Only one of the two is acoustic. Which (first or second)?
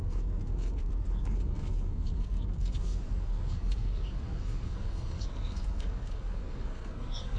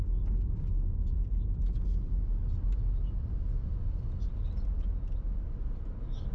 second